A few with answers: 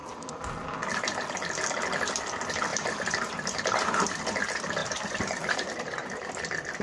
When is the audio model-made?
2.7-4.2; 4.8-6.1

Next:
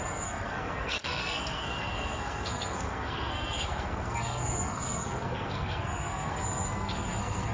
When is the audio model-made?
0.0-7.5

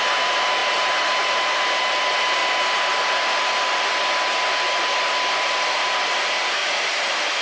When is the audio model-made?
0.6-2.0; 6.6-7.4

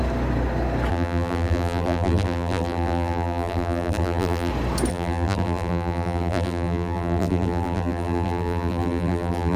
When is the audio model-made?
0.9-4.5; 4.9-9.6